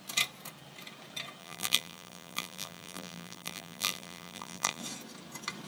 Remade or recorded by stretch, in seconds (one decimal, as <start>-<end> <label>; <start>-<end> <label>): 0.0-1.4 recorded; 1.4-4.8 remade; 4.8-5.7 recorded